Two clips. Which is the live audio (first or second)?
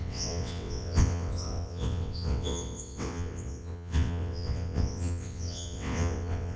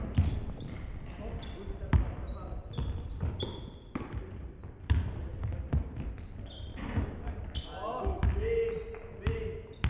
second